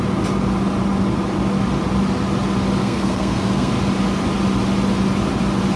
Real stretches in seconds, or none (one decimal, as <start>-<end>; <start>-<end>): 0.0-2.8; 3.7-5.8